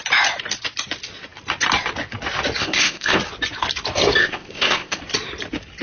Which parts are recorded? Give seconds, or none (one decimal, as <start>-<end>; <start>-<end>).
0.0-2.6; 3.2-4.2; 5.0-5.8